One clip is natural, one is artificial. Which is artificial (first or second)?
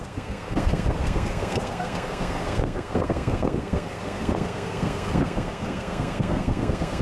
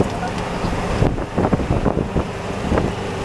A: first